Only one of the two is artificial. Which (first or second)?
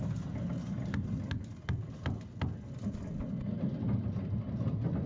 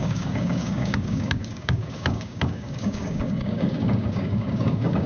second